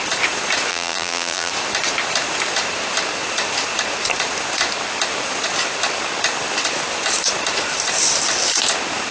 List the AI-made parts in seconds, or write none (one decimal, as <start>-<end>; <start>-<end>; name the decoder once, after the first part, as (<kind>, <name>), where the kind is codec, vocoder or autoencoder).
0.7-1.5 (vocoder, BigVGAN v2)